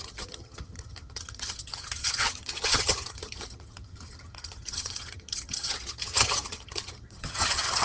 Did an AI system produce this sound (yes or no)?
yes